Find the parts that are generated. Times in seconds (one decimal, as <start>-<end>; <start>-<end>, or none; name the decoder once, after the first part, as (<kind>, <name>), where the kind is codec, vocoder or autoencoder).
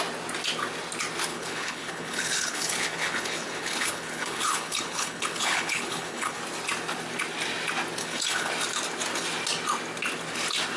1.3-6.4 (codec, HILCodec); 8.0-8.5